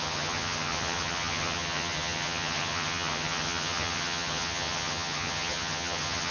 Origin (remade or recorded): remade